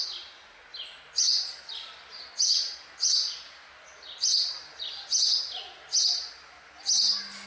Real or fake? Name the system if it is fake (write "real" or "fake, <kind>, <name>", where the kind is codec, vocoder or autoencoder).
real